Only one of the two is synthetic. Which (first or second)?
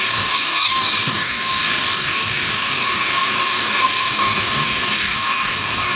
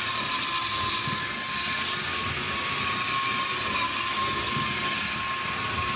first